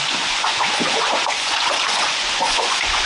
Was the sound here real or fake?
fake